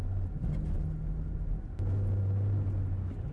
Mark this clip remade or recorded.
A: recorded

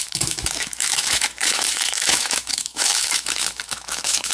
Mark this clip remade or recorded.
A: remade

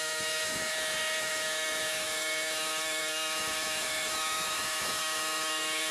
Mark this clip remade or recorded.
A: remade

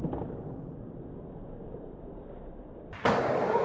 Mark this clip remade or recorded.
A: recorded